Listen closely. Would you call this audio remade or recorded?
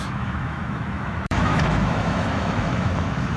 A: remade